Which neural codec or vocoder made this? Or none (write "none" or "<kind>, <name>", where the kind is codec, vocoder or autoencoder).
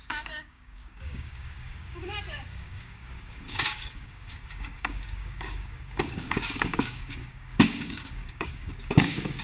codec, DAC